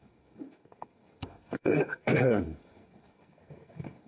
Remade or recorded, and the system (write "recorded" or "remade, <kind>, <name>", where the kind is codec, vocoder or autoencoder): remade, codec, SNAC